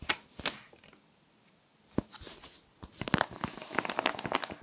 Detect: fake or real real